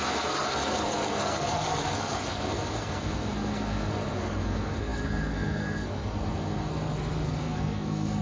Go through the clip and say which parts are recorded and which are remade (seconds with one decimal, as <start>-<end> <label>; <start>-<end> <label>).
0.0-8.2 remade